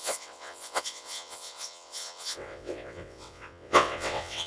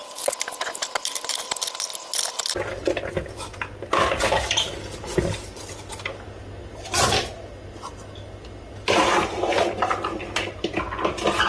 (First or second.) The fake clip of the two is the first